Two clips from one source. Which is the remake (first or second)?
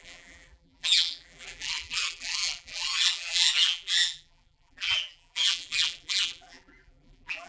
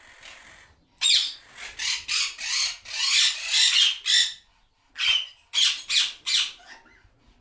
first